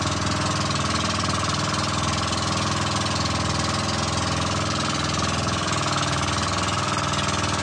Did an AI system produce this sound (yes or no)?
no